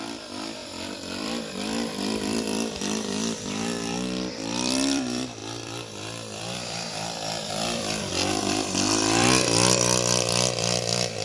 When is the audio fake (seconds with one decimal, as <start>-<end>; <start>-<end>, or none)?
0.0-11.2